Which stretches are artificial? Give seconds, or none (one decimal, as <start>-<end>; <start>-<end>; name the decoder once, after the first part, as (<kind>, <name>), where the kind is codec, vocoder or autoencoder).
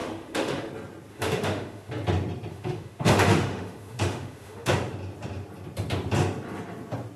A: 0.0-0.7 (autoencoder, DAC-VAE); 1.1-1.9; 2.5-4.7